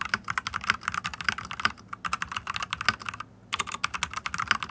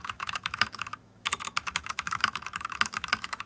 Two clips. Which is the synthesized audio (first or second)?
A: second